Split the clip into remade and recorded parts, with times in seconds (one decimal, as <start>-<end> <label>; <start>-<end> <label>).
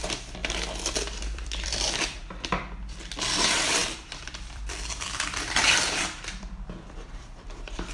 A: 0.0-0.4 remade; 0.4-1.2 recorded; 1.2-7.9 remade